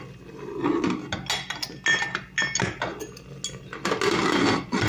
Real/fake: real